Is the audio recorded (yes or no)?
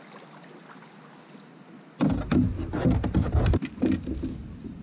yes